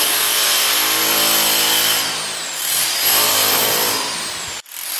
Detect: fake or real fake